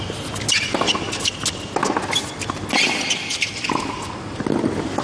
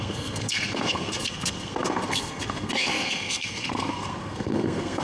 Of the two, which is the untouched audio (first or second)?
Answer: first